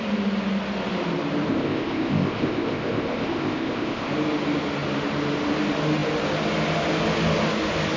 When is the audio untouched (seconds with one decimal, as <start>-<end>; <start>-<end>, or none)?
0.0-1.5; 4.1-8.0